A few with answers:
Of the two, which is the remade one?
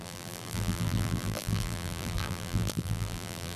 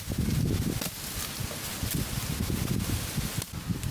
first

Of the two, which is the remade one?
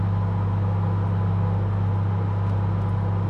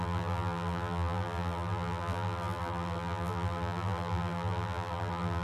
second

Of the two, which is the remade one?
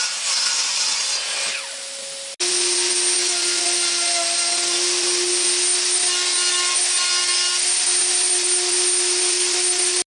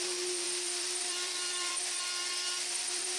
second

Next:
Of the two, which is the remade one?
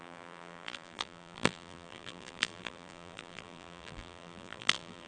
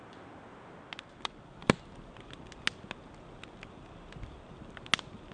first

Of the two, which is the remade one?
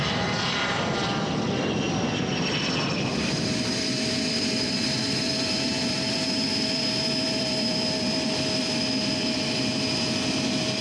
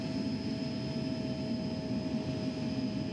first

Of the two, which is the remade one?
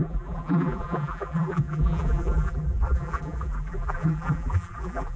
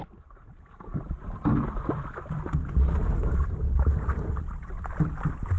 first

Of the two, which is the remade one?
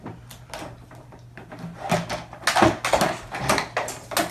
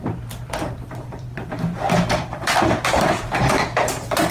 second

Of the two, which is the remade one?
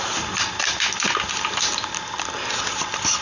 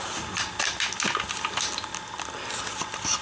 first